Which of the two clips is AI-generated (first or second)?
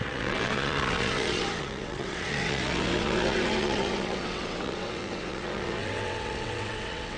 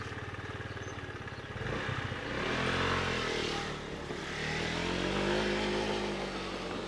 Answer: first